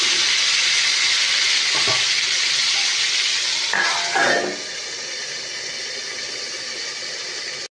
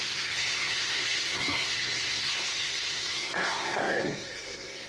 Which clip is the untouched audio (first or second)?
first